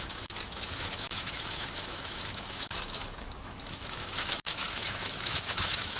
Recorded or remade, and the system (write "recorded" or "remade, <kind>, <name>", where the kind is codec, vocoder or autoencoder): remade, autoencoder, DAC-VAE